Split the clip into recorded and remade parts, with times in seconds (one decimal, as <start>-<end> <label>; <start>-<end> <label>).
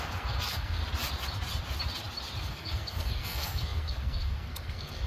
0.0-0.8 remade; 0.8-2.4 recorded; 2.4-5.1 remade